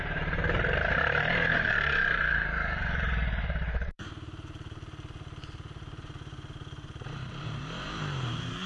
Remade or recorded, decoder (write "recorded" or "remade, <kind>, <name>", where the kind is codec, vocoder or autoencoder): remade, vocoder, BigVGAN v2